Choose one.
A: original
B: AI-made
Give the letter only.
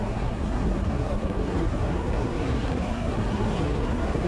B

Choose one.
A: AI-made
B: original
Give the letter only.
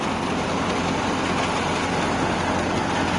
B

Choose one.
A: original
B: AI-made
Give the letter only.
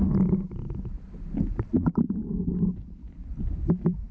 A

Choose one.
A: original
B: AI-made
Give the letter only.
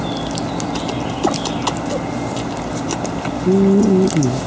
A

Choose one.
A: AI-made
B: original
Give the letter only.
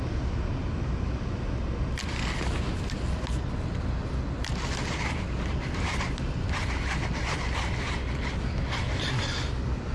B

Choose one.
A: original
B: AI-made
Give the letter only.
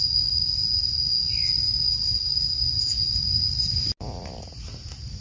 A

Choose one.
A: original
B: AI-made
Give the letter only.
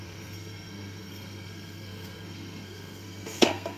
B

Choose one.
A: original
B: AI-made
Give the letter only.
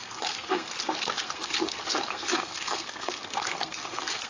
B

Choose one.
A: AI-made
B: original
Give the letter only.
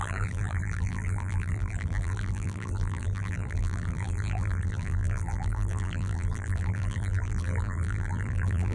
A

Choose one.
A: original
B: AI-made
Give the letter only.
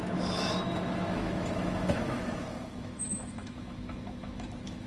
B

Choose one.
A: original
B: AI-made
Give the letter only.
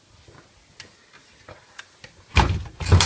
A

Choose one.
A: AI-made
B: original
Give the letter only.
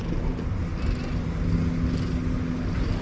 B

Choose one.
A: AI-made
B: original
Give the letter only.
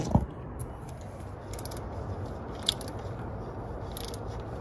B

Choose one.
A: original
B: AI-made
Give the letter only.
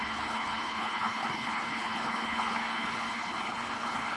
B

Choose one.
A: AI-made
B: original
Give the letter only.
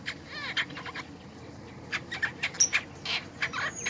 B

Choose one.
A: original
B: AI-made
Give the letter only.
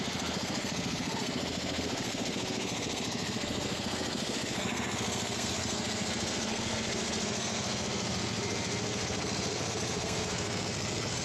B